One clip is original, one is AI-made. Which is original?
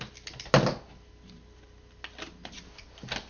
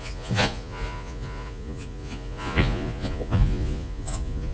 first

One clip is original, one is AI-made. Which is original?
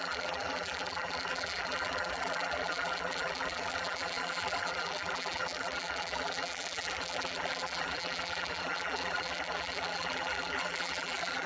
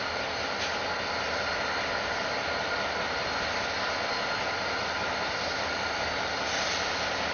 second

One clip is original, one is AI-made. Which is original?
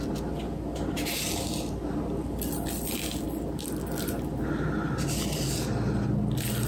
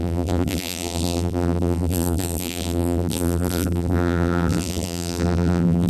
first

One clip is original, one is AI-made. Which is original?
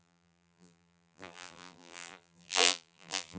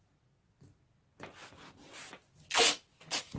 second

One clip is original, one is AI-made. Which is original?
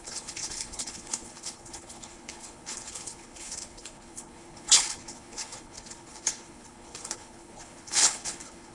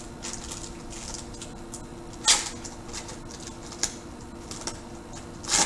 second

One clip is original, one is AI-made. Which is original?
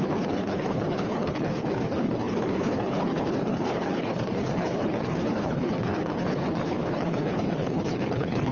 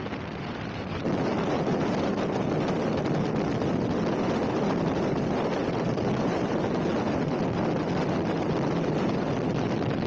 second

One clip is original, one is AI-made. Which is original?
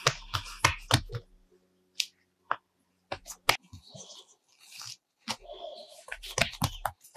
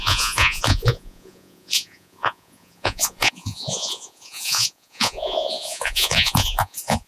first